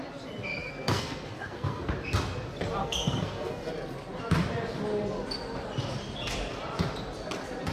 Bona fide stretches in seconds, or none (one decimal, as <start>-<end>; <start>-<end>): 0.0-0.6; 1.9-2.8; 3.7-7.7